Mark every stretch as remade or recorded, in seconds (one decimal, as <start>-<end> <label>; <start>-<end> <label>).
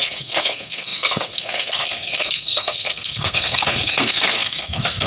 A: 0.0-5.1 remade